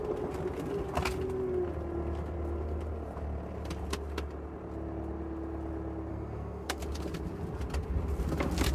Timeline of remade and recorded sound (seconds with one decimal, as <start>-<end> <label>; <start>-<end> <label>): 0.0-6.1 recorded; 6.1-6.8 remade; 6.8-8.7 recorded